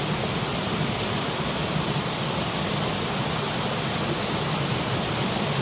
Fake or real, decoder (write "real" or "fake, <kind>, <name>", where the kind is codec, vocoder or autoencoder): real